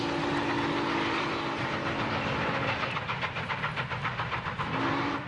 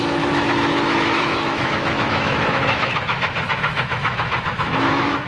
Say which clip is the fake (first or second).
second